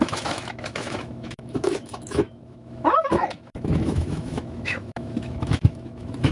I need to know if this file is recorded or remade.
remade